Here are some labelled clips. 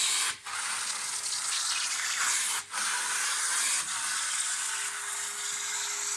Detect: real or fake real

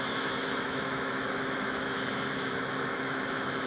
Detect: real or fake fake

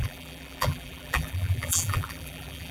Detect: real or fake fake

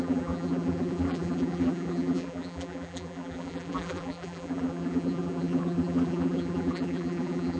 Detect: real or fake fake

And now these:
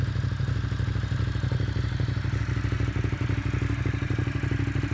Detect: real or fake real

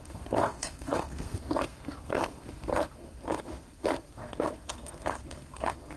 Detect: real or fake fake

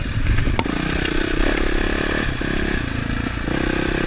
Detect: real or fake real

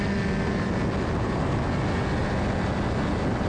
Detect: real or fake real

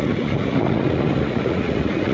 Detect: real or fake fake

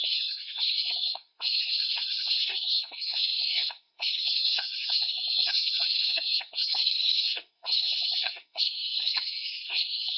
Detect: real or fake fake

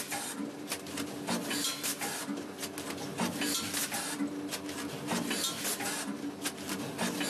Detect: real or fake real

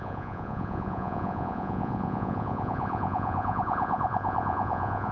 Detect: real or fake fake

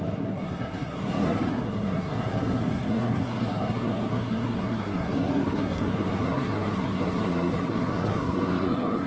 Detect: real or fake fake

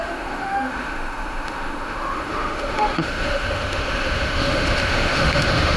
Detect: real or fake fake